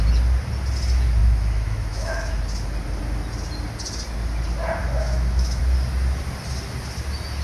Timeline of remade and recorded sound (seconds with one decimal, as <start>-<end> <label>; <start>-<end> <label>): 0.0-1.2 recorded; 1.2-2.4 remade; 2.4-4.8 recorded; 4.8-5.6 remade; 5.6-7.4 recorded